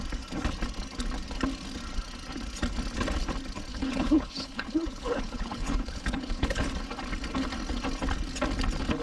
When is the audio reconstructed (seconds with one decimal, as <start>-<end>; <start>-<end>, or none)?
3.7-6.7